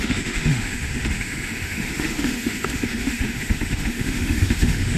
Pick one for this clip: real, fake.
fake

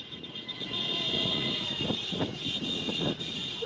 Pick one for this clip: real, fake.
fake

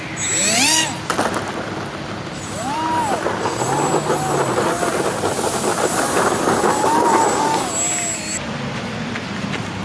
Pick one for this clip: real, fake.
real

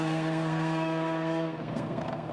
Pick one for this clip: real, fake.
fake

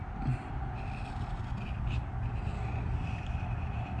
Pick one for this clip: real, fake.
real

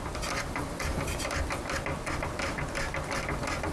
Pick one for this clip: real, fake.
real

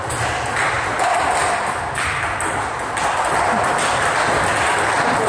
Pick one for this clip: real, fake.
real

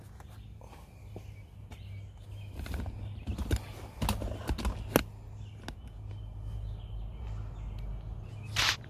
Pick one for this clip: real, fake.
real